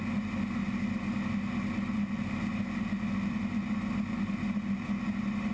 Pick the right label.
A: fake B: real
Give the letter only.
B